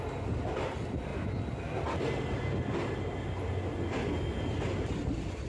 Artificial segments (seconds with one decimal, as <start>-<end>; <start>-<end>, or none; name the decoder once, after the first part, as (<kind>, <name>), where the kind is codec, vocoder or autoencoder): none